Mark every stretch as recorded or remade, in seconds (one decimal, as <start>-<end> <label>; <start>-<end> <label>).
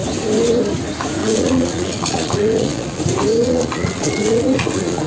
0.0-1.2 recorded; 1.2-3.0 remade; 3.0-3.4 recorded; 3.4-5.1 remade